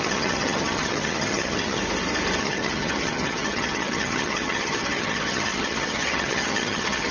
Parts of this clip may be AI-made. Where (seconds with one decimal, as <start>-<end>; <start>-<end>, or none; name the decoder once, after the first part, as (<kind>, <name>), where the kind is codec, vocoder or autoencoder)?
0.0-1.8 (vocoder, HiFi-GAN); 2.4-7.1

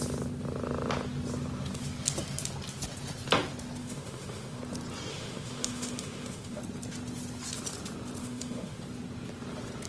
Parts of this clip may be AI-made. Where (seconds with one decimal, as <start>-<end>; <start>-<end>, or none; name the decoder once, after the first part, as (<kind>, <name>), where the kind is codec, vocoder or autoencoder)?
3.8-4.6 (autoencoder, DAC-VAE); 5.1-6.6; 8.2-8.8